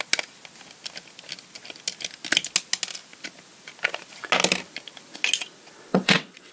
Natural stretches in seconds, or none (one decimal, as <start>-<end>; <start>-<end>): 0.0-5.9